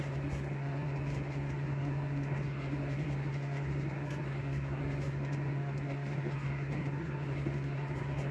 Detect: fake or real fake